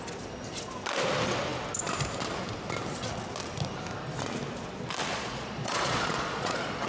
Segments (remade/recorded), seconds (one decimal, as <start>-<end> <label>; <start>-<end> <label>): 0.0-5.1 recorded; 5.1-6.9 remade